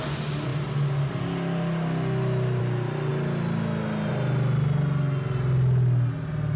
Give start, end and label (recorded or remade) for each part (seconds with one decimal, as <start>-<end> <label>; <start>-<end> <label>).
0.0-6.6 recorded